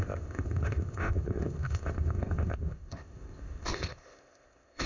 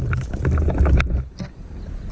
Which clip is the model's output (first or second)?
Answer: first